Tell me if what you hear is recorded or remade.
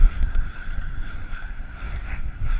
remade